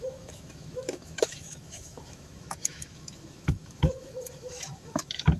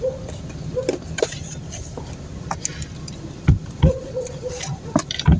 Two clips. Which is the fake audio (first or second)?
first